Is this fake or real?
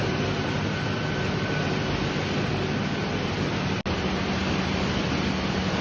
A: real